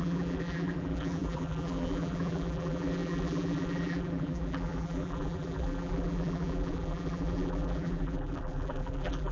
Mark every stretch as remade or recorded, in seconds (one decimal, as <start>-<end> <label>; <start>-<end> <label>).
0.0-9.3 remade